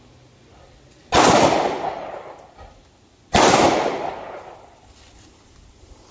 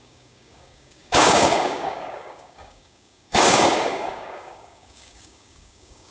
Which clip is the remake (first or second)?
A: second